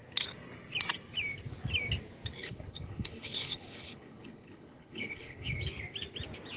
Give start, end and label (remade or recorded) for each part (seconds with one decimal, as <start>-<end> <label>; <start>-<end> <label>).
0.0-2.4 recorded; 2.4-5.6 remade; 5.6-6.6 recorded